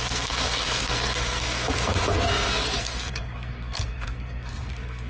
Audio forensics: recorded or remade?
remade